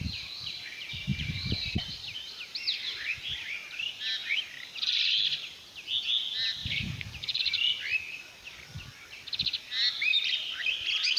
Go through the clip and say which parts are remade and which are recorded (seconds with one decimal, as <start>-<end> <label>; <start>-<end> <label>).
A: 0.0-1.1 recorded; 1.1-3.2 remade; 3.2-6.6 recorded; 6.6-7.4 remade; 7.4-10.1 recorded; 10.1-10.6 remade; 10.6-11.2 recorded